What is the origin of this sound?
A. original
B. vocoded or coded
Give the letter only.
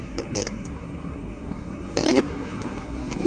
B